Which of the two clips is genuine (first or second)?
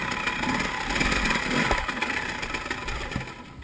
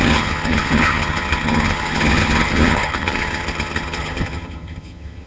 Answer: first